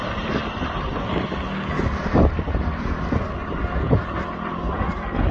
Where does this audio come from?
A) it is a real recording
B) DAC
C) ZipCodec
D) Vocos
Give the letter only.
A